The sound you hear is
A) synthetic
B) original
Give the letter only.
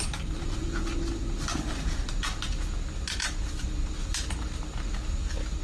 B